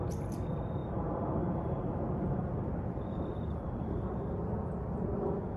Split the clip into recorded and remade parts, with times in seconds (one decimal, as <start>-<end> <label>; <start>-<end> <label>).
0.0-0.8 recorded; 0.8-4.2 remade; 4.2-5.6 recorded